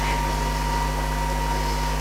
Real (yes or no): yes